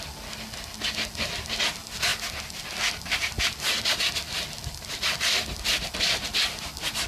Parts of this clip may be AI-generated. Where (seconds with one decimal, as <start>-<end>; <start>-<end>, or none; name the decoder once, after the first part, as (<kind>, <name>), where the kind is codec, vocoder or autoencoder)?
none